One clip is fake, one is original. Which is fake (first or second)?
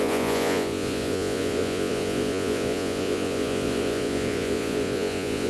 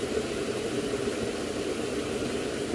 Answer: first